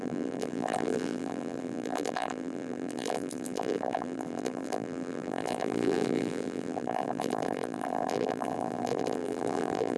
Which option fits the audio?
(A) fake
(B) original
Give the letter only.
A